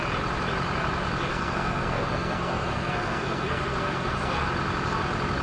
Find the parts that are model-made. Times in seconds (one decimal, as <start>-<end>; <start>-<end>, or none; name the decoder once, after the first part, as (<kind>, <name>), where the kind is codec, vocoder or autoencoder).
1.3-4.5 (codec, SNAC)